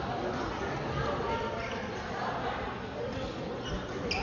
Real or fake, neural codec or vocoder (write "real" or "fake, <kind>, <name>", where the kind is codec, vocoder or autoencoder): real